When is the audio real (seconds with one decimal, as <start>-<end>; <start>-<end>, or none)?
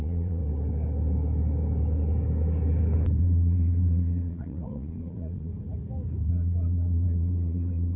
0.4-3.2; 5.5-6.3